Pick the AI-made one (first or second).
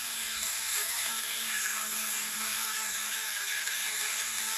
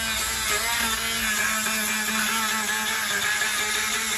first